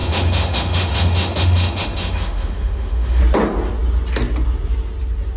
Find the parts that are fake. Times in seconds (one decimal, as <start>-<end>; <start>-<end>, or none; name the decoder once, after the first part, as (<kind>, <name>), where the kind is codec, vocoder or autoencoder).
0.0-3.2 (autoencoder, DAC-VAE)

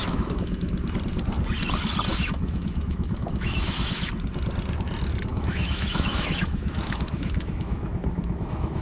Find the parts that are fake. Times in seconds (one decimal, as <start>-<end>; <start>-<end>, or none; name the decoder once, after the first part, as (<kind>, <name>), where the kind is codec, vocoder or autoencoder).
0.0-0.7 (autoencoder, DAC-VAE); 2.1-4.1; 5.3-8.8

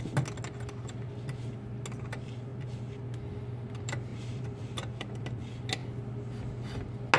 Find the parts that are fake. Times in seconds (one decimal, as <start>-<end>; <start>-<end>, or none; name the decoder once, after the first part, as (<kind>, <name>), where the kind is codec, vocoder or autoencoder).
4.1-5.2 (vocoder, BigVGAN v2)

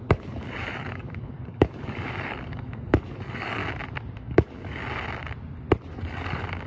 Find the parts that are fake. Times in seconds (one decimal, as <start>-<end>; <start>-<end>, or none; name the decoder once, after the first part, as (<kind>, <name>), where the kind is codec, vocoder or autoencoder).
0.0-3.6 (codec, DAC); 4.2-4.8; 6.0-6.7

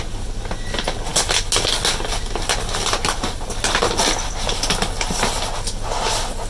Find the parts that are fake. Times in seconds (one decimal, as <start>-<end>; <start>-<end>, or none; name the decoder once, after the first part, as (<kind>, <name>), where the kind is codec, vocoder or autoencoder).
none

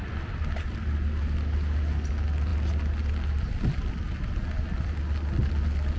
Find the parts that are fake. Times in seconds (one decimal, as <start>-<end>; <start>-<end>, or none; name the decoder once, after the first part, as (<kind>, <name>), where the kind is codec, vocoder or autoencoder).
none

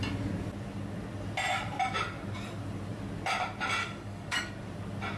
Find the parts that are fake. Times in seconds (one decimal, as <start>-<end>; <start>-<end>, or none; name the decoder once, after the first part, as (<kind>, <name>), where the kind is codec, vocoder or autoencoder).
3.8-4.5 (codec, DAC)